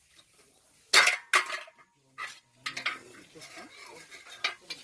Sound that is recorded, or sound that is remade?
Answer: recorded